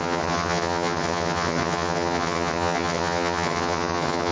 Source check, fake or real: fake